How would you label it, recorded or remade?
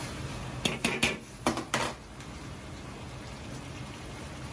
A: recorded